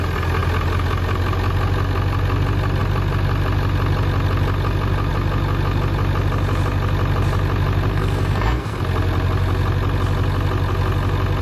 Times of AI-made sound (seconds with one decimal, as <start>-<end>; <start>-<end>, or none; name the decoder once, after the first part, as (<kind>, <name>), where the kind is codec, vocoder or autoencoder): 7.9-8.8 (codec, SNAC)